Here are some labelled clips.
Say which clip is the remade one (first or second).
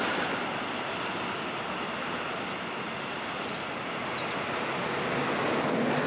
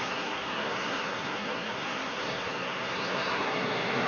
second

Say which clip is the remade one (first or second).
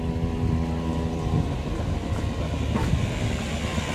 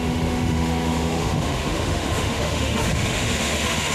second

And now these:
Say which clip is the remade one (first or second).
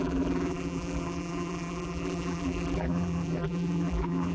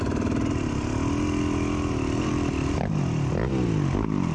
first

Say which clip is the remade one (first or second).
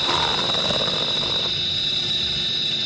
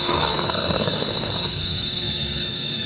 second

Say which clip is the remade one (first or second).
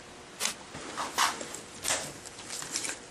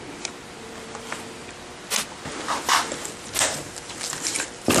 first